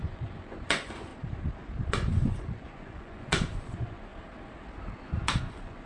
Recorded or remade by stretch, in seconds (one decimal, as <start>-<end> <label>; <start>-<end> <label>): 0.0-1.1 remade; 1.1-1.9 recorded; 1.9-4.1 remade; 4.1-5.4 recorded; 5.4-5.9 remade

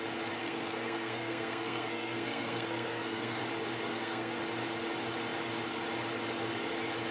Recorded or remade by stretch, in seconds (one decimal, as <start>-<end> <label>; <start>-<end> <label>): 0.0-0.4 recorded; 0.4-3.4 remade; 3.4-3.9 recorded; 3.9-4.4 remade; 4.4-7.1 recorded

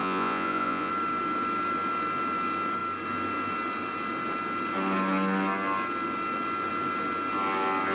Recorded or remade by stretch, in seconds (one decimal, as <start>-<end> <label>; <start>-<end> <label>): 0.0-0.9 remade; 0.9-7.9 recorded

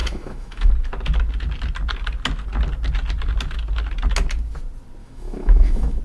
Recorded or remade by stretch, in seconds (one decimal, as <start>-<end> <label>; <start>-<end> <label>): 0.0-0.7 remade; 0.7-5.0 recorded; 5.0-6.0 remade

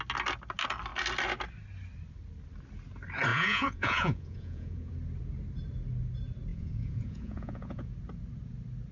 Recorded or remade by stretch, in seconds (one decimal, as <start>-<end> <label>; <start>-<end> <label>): 0.0-3.3 recorded; 3.3-4.9 remade; 4.9-6.5 recorded; 6.5-7.9 remade; 7.9-8.9 recorded

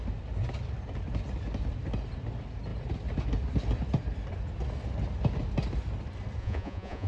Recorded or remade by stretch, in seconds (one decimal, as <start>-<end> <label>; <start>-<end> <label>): 0.0-6.4 recorded; 6.4-7.1 remade